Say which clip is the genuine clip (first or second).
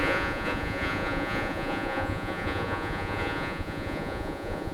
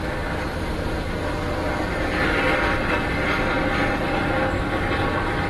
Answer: second